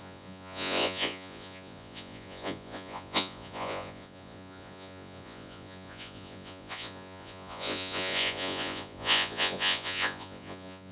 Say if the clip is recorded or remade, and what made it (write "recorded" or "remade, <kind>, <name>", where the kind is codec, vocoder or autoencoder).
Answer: remade, vocoder, Vocos